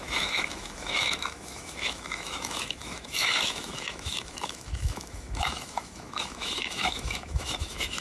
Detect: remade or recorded remade